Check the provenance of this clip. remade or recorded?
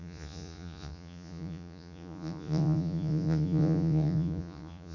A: remade